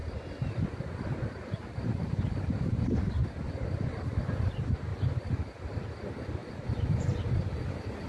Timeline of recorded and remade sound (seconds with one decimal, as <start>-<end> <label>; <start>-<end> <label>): 0.0-3.6 remade; 3.6-4.9 recorded; 4.9-5.8 remade; 5.8-8.1 recorded